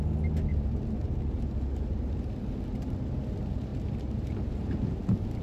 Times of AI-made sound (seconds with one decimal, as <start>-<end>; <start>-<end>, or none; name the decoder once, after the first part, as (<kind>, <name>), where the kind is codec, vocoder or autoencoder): 1.0-2.4 (vocoder, BigVGAN v2); 3.7-5.0